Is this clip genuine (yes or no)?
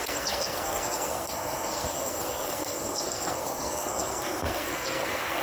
no